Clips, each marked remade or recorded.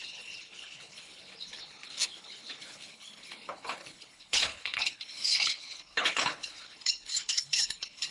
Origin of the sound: remade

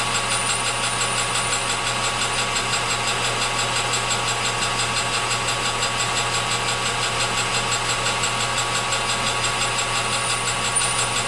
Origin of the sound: recorded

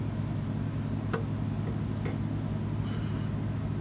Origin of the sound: recorded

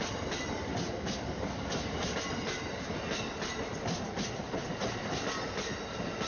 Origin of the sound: recorded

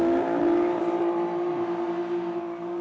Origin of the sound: recorded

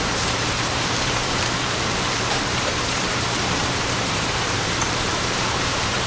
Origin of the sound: remade